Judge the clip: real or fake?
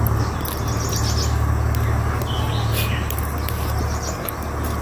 real